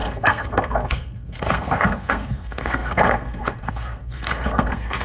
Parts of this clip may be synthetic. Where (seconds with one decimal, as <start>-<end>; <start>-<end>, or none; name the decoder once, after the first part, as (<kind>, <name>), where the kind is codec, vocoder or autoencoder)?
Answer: 0.0-5.0 (codec, SNAC)

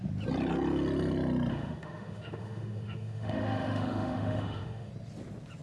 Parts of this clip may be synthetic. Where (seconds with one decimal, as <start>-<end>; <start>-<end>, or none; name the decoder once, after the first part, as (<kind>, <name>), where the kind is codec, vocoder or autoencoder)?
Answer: 1.5-4.9 (autoencoder, DAC-VAE)

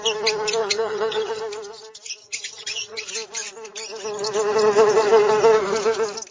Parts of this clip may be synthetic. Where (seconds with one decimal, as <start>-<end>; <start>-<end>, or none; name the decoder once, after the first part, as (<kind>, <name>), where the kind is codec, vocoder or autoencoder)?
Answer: 0.6-1.4 (vocoder, HiFi-GAN); 2.2-3.1

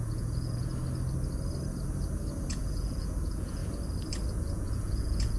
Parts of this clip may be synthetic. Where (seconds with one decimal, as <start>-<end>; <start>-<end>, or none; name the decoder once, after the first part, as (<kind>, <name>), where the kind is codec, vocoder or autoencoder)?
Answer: 0.0-0.7 (vocoder, Vocos); 2.5-3.6; 4.4-5.4

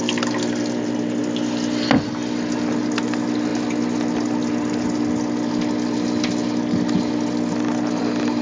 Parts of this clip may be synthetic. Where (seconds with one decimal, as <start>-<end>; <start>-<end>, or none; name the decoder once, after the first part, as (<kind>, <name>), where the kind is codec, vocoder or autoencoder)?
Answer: none

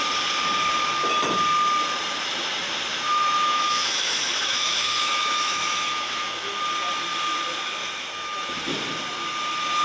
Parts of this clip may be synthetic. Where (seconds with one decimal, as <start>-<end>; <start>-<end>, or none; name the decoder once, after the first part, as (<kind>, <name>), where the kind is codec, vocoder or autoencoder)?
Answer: 2.9-6.6 (autoencoder, DAC-VAE); 7.8-8.6

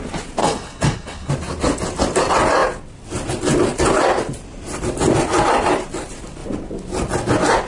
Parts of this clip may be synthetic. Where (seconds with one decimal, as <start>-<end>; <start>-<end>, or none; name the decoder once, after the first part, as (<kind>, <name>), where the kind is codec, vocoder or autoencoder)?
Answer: 0.4-1.3 (codec, HILCodec)